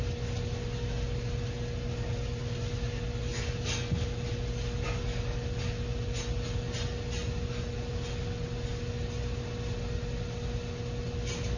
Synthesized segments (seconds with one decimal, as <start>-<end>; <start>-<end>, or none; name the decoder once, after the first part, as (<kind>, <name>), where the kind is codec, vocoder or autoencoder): none